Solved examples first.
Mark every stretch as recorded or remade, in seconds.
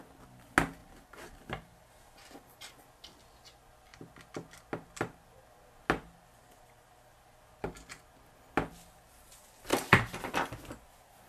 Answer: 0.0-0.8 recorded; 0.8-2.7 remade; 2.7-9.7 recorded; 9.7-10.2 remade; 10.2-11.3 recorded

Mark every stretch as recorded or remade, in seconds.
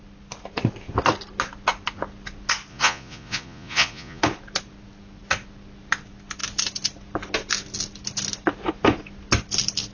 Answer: 0.0-2.7 recorded; 2.7-4.2 remade; 4.2-9.9 recorded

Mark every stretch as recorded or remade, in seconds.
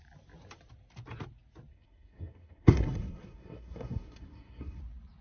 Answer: 0.0-1.7 recorded; 1.7-4.8 remade; 4.8-5.2 recorded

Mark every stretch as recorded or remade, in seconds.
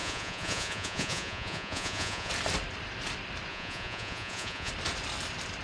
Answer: 0.0-2.3 remade; 2.3-3.5 recorded; 3.5-4.7 remade; 4.7-5.6 recorded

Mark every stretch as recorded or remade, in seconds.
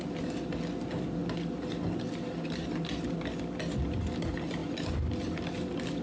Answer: 0.0-6.0 recorded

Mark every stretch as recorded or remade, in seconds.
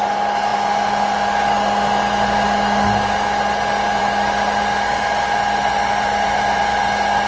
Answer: 0.0-7.3 recorded